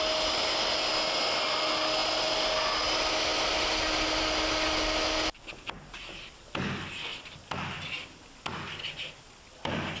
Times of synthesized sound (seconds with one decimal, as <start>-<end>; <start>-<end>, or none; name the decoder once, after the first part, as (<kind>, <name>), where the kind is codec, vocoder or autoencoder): none